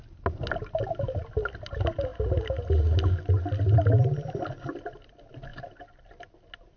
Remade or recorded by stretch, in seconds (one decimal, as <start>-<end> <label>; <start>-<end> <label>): 0.0-6.8 recorded